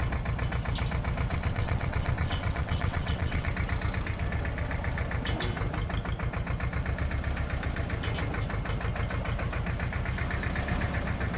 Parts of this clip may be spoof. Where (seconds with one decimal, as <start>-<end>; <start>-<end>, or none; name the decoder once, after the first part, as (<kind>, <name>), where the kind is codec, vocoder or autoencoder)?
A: 1.3-3.5 (vocoder, WaveNeXt)